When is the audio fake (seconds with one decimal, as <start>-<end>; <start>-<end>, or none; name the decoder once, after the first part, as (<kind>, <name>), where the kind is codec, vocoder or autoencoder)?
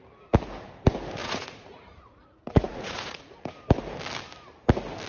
1.2-3.2 (vocoder, Vocos)